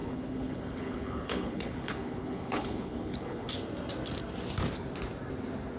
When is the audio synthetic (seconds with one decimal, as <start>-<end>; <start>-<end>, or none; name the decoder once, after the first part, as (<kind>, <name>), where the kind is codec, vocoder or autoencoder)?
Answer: 0.0-3.5 (codec, HILCodec)